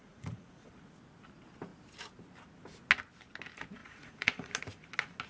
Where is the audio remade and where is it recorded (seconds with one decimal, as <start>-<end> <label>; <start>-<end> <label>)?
0.0-0.7 remade; 0.7-3.8 recorded; 3.8-4.5 remade; 4.5-5.3 recorded